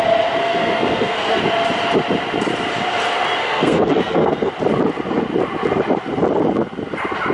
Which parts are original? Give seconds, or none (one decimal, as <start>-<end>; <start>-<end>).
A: 0.0-0.4; 1.4-3.4; 4.5-7.3